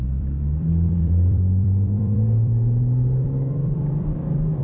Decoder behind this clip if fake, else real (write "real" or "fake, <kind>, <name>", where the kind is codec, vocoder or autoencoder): fake, vocoder, BigVGAN v2